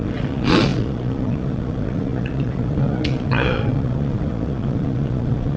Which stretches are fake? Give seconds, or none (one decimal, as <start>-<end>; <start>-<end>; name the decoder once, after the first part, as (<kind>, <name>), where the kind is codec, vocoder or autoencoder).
0.0-5.6 (vocoder, Vocos)